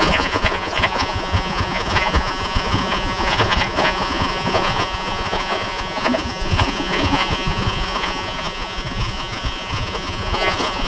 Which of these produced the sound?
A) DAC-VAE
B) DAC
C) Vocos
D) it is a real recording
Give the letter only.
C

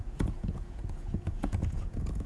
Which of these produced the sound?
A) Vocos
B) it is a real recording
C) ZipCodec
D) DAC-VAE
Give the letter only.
A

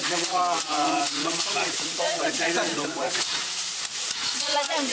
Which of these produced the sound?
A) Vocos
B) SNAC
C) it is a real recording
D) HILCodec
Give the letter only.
A